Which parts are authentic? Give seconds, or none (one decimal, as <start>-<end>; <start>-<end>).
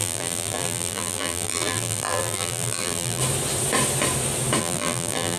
3.2-4.6